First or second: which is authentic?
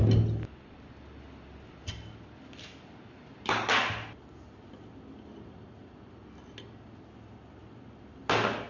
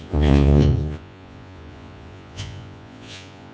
first